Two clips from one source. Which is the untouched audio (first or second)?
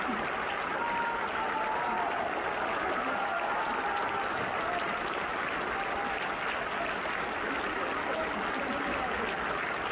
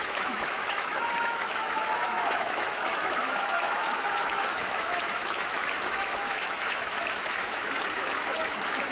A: first